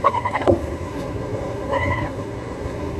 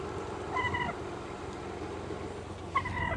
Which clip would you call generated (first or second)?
first